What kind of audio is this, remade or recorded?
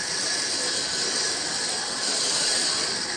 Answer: recorded